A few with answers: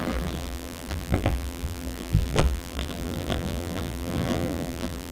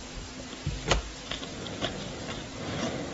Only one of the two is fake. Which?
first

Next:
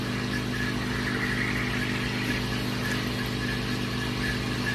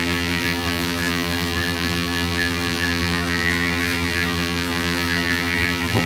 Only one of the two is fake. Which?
second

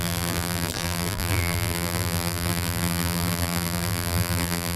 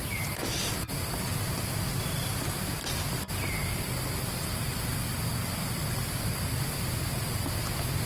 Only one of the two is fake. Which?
first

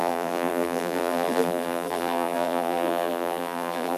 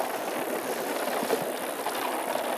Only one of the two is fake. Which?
first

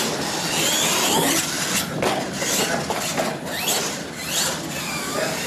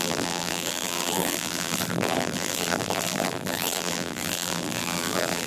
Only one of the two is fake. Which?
second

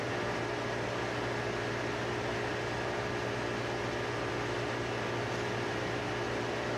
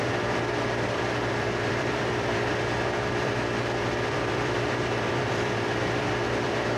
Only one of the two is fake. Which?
second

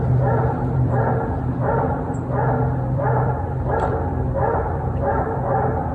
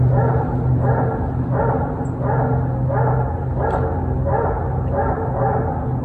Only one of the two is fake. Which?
first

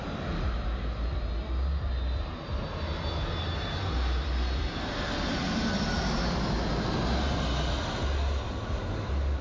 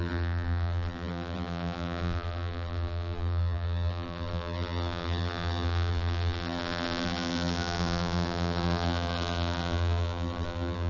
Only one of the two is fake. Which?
second